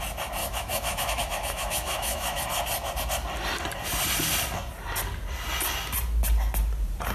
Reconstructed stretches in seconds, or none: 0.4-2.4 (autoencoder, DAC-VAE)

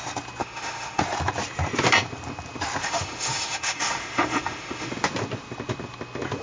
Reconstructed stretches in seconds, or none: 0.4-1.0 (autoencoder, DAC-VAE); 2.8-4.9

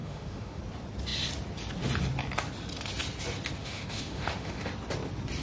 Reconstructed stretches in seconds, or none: 0.0-0.6 (autoencoder, DAC-VAE); 3.6-4.7

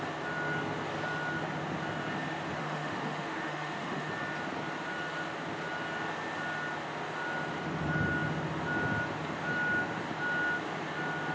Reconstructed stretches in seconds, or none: 2.6-4.1 (autoencoder, DAC-VAE)

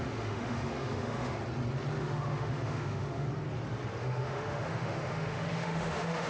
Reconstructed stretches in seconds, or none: 0.0-1.4 (autoencoder, DAC-VAE); 2.0-3.3; 4.0-6.3

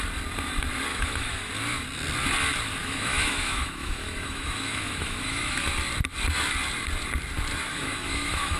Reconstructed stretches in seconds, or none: 0.9-1.5 (autoencoder, DAC-VAE); 2.8-5.6; 7.7-8.6

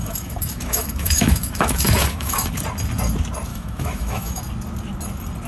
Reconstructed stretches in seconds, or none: 0.0-2.5 (autoencoder, DAC-VAE); 3.5-4.4